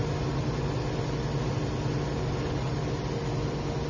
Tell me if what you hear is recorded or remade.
recorded